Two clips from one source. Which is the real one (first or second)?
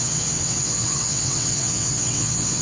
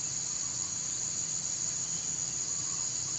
second